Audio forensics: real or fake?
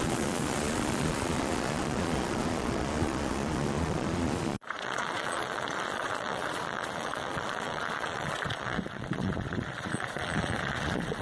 fake